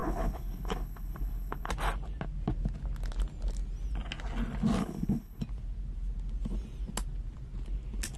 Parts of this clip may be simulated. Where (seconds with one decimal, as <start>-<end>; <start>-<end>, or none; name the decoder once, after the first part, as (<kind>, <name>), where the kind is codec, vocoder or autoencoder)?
0.0-1.7 (codec, HILCodec); 4.8-5.4